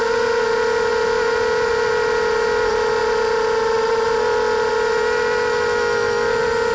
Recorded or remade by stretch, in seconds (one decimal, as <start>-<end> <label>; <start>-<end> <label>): 0.0-6.7 recorded